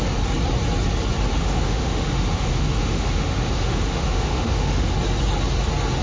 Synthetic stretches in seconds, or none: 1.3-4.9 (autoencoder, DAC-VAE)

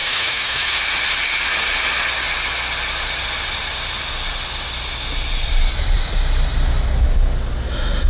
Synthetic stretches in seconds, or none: 0.0-0.8 (autoencoder, DAC-VAE)